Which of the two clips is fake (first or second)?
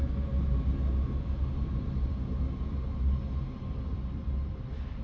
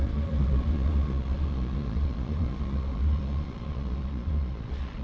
second